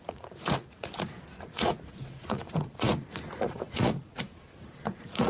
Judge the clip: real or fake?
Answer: fake